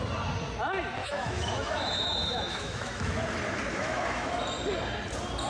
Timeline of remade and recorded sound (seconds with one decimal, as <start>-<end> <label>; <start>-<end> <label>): 0.0-1.0 recorded; 1.0-3.1 remade; 3.1-3.7 recorded; 3.7-4.4 remade; 4.4-5.5 recorded